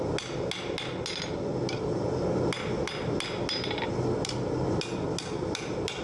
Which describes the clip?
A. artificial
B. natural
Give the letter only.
B